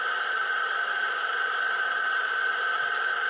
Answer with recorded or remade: recorded